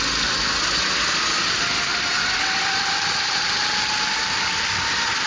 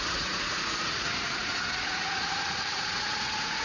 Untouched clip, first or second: first